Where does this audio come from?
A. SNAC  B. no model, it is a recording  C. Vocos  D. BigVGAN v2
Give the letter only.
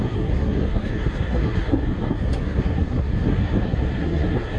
A